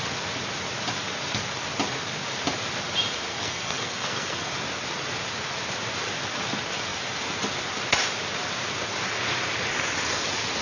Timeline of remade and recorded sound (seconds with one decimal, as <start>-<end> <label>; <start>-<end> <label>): 0.0-3.3 recorded; 3.3-4.5 remade; 4.5-10.6 recorded